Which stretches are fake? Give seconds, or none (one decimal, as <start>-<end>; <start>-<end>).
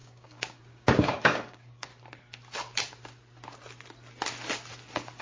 0.0-1.9